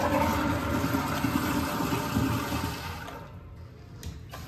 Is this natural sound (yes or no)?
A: yes